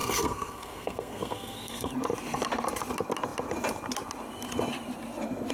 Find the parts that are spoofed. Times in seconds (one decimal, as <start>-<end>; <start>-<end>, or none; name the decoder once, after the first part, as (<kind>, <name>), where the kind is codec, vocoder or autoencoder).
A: 0.0-1.9 (codec, SNAC)